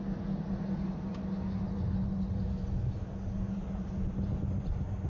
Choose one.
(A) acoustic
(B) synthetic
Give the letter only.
A